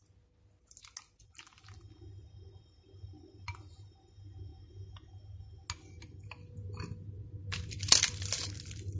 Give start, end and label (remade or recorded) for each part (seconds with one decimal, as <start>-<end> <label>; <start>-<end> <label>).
0.0-9.0 recorded